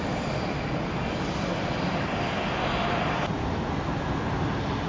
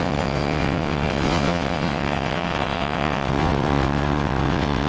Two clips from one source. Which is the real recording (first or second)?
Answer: first